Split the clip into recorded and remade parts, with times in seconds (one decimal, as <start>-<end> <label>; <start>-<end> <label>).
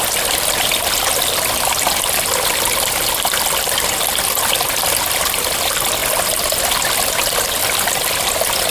0.0-8.7 recorded